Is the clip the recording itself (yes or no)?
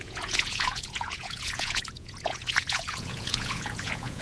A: no